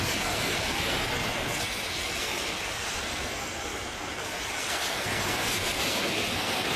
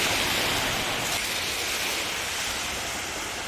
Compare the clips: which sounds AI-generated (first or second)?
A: first